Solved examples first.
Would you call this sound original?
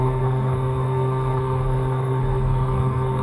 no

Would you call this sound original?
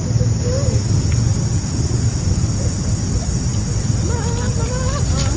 yes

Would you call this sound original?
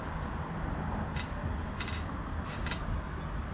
yes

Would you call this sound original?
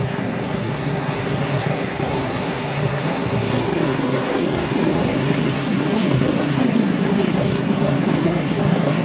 no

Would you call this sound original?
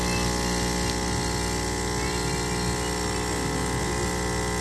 yes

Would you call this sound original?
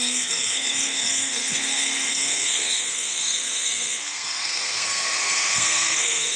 no